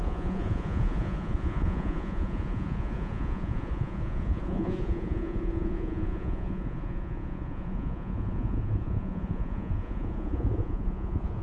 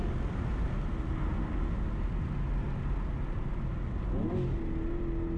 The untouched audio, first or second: second